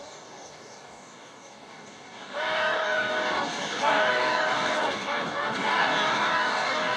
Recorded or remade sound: remade